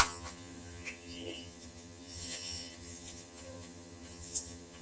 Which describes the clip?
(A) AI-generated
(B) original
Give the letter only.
A